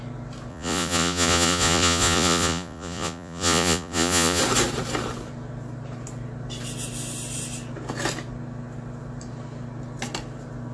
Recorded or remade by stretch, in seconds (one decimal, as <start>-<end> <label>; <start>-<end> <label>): 0.0-0.5 recorded; 0.5-4.4 remade; 4.4-10.7 recorded